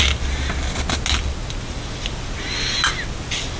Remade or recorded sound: recorded